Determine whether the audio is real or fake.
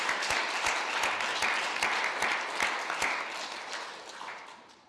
real